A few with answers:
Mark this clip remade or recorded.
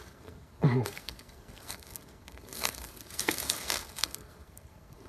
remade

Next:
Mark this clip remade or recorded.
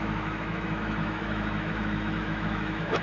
remade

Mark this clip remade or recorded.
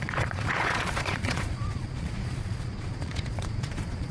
remade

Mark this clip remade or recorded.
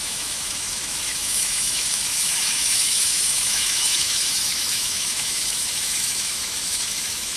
remade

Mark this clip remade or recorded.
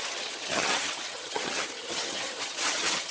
remade